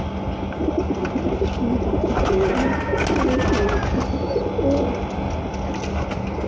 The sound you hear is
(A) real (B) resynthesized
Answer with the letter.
A